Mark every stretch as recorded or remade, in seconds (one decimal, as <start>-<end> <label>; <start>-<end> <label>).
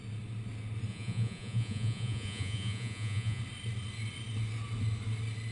0.0-0.9 recorded; 0.9-3.4 remade; 3.4-5.5 recorded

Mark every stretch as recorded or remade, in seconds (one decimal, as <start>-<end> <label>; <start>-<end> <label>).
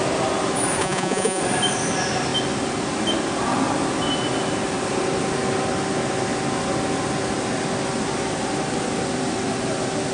0.0-0.8 recorded; 0.8-1.4 remade; 1.4-10.1 recorded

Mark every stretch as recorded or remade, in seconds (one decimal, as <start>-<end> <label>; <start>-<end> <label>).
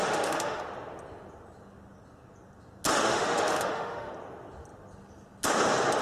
0.0-0.6 remade; 0.6-2.9 recorded; 2.9-4.1 remade; 4.1-6.0 recorded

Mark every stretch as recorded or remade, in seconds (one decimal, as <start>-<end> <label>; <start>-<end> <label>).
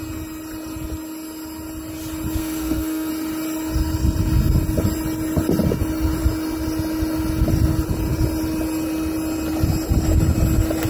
0.0-2.4 recorded; 2.4-3.1 remade; 3.1-10.9 recorded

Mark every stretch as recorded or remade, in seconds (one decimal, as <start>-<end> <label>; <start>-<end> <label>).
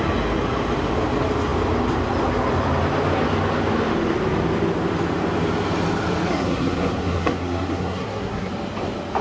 0.0-6.3 recorded; 6.3-8.5 remade; 8.5-9.2 recorded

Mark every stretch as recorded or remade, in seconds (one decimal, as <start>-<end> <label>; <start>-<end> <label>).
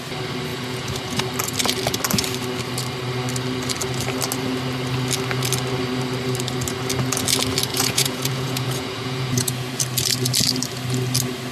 0.0-0.5 recorded; 0.5-1.2 remade; 1.2-7.7 recorded; 7.7-9.8 remade; 9.8-11.5 recorded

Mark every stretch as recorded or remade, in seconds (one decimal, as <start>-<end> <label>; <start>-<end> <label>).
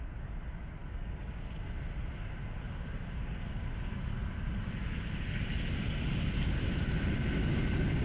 0.0-8.0 recorded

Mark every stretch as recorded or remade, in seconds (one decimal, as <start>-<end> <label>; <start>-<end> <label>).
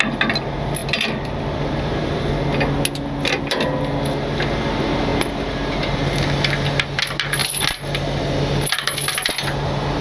0.0-0.8 recorded; 0.8-2.3 remade; 2.3-10.0 recorded